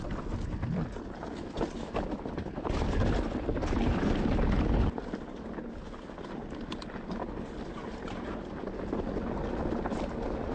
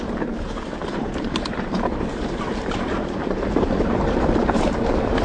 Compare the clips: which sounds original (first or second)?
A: first